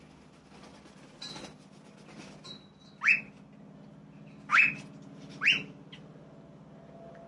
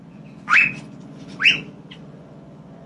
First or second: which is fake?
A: second